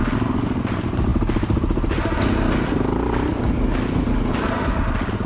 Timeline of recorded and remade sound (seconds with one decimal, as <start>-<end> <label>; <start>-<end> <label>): 0.0-5.3 recorded